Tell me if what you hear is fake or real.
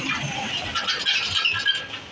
real